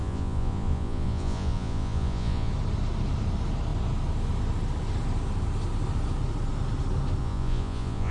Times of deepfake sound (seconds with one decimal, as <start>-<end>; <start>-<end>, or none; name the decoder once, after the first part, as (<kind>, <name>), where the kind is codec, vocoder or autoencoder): 0.0-2.5 (vocoder, Vocos); 7.2-8.1